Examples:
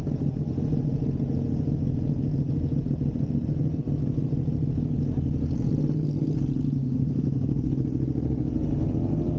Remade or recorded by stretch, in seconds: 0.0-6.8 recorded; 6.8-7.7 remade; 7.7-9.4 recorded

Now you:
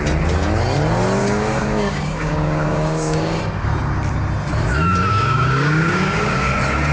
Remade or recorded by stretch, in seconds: 0.0-1.2 recorded; 1.2-3.4 remade; 3.4-5.1 recorded; 5.1-6.5 remade; 6.5-6.9 recorded

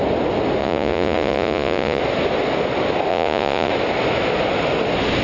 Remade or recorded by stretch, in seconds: 0.0-0.6 recorded; 0.6-2.0 remade; 2.0-3.1 recorded; 3.1-3.7 remade; 3.7-5.2 recorded

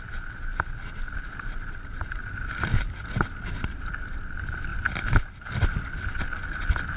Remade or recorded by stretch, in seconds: 0.0-7.0 recorded

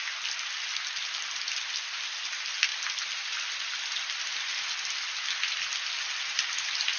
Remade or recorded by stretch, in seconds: 0.0-7.0 recorded

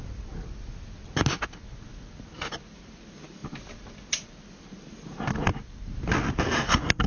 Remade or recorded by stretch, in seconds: 0.0-7.1 recorded

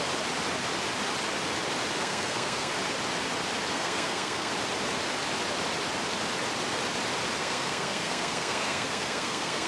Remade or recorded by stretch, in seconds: 0.0-2.0 recorded; 2.0-2.7 remade; 2.7-3.7 recorded; 3.7-4.5 remade; 4.5-7.4 recorded; 7.4-9.7 remade

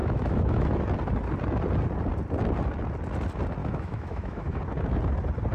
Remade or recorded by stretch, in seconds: 0.0-0.8 remade; 0.8-3.6 recorded; 3.6-4.6 remade; 4.6-5.5 recorded